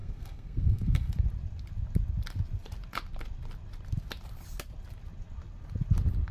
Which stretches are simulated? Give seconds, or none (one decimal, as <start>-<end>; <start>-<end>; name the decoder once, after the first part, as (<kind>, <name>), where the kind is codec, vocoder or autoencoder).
0.0-1.1 (codec, SNAC)

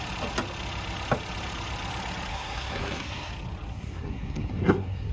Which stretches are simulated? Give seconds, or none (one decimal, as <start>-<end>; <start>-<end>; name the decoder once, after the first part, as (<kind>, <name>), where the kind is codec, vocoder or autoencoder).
2.3-3.3 (codec, SNAC); 3.7-5.1

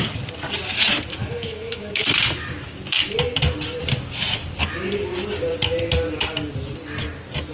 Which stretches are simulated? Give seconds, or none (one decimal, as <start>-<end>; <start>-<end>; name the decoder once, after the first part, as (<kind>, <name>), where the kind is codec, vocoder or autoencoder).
1.2-2.0 (autoencoder, DAC-VAE)

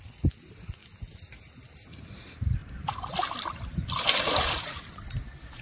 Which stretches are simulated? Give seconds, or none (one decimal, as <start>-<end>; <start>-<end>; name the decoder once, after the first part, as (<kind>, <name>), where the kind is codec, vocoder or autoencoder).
0.0-0.8 (vocoder, BigVGAN v2); 2.1-5.6